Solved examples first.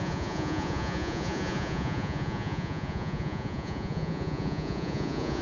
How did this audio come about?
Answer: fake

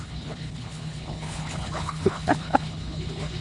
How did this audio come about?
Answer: fake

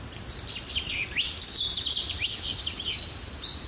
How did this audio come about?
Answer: real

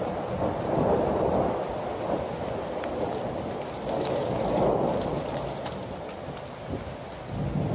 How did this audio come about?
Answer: real